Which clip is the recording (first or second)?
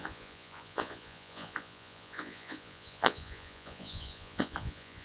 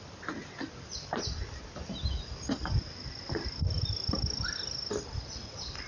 second